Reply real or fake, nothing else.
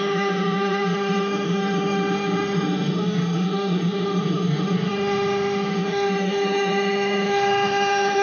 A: fake